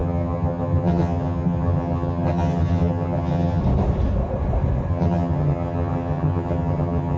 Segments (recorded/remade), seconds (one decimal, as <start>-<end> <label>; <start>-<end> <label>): 0.0-3.6 remade; 3.6-4.9 recorded; 4.9-7.2 remade